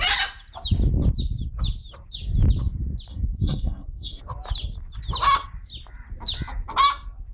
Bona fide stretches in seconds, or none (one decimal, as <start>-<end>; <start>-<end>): 0.0-3.1; 4.2-7.3